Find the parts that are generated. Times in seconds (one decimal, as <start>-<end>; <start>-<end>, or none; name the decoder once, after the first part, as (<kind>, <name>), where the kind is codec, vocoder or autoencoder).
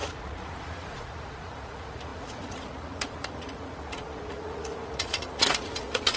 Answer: 0.0-6.2 (vocoder, Vocos)